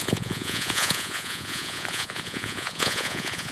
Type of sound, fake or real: fake